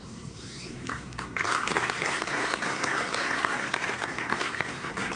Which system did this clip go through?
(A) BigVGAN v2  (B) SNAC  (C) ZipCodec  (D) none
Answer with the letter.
B